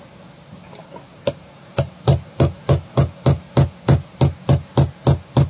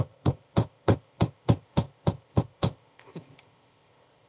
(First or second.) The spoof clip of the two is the second